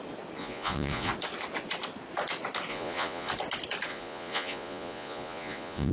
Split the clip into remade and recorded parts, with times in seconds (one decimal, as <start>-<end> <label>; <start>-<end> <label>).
0.0-0.4 recorded; 0.4-1.1 remade; 1.1-2.7 recorded; 2.7-3.3 remade; 3.3-3.9 recorded; 3.9-5.9 remade